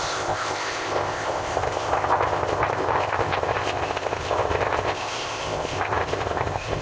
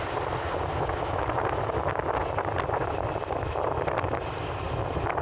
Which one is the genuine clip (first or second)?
second